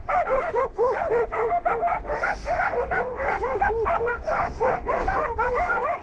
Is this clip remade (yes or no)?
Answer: yes